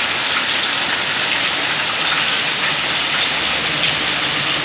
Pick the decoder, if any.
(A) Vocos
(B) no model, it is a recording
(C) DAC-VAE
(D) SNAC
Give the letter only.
B